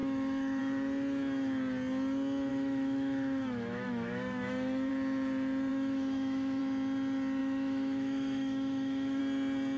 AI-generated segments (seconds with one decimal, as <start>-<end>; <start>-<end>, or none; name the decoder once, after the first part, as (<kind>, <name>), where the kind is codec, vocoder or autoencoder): 0.0-0.6 (autoencoder, DAC-VAE); 2.5-4.9; 5.7-6.6; 7.4-9.2